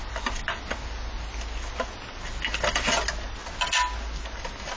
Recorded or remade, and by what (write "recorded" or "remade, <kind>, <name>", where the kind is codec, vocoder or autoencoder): recorded